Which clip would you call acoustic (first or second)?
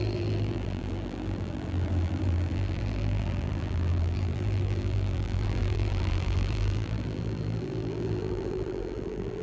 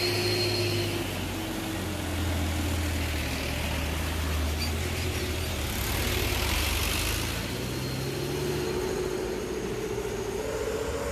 second